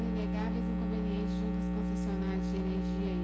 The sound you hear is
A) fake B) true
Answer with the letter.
B